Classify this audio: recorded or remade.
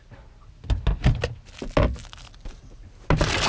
recorded